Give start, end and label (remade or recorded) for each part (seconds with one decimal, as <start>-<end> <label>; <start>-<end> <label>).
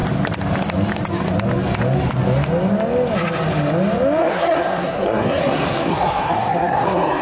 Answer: 0.0-4.2 recorded; 4.2-7.2 remade